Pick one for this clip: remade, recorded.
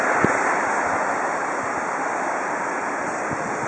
remade